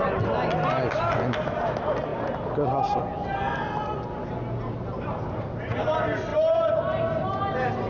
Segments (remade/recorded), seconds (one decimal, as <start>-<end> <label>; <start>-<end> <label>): 0.0-7.9 recorded